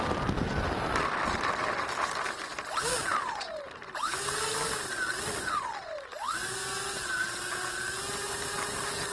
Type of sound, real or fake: real